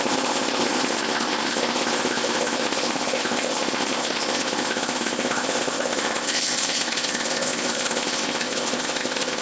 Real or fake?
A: fake